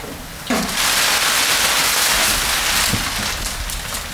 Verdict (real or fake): real